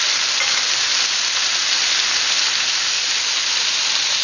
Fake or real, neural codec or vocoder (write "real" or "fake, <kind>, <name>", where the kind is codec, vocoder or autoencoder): real